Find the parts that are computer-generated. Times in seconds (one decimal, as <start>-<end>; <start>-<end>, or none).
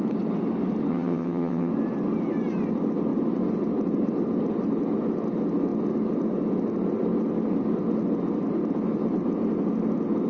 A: 0.9-1.7